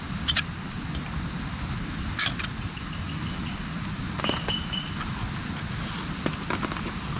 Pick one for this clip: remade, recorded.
recorded